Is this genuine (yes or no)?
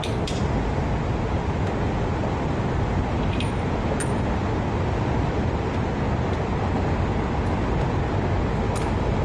yes